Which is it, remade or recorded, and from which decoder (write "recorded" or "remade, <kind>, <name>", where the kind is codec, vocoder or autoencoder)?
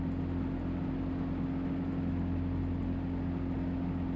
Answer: recorded